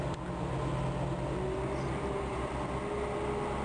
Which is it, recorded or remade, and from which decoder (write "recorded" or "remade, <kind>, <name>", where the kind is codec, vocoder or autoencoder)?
remade, vocoder, BigVGAN v2